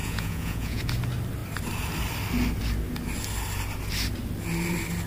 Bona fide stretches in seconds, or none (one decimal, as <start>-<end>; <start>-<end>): 0.8-5.1